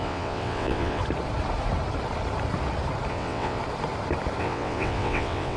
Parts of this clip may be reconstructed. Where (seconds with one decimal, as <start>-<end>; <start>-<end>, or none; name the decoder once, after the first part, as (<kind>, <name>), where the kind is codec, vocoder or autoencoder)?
0.0-1.0 (vocoder, WaveNeXt); 3.1-3.6; 4.4-5.6